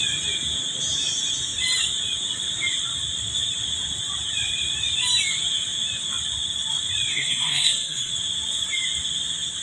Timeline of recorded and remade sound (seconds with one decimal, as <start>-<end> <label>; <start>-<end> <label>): 0.0-7.1 recorded; 7.1-8.1 remade; 8.1-9.6 recorded